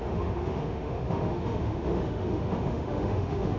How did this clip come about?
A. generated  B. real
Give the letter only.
A